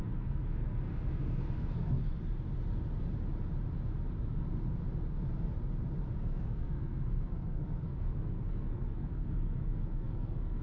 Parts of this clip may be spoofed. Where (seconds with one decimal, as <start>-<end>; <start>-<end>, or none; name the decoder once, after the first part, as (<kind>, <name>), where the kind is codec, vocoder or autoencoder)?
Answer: 0.0-2.0 (codec, SNAC); 6.2-10.6